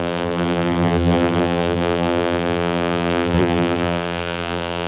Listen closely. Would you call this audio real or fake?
fake